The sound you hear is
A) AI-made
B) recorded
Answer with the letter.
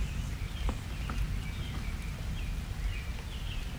B